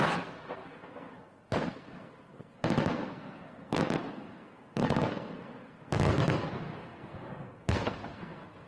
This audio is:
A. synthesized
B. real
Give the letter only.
A